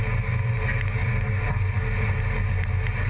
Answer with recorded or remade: recorded